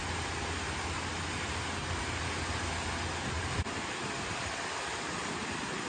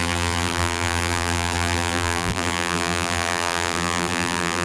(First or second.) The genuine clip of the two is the first